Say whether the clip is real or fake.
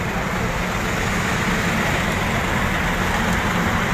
real